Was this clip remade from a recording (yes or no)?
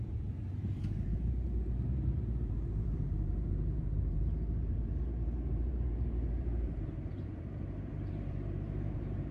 yes